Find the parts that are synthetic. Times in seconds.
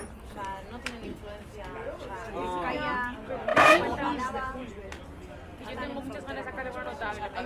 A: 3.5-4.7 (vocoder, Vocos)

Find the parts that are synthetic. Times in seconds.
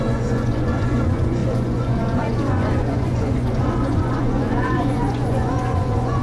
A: 0.0-6.2 (vocoder, Vocos)